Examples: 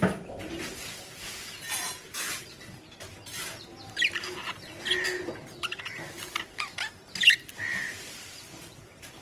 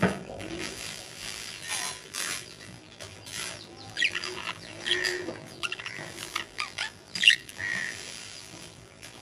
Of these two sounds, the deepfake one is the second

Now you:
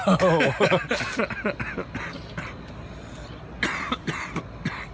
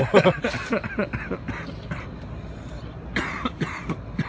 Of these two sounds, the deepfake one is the second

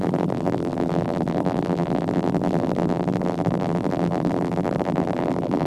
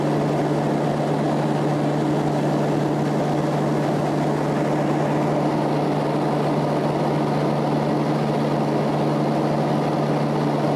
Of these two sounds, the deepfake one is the first